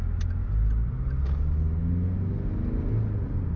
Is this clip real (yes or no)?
yes